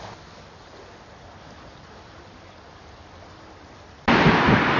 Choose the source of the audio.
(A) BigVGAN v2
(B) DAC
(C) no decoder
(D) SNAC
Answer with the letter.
C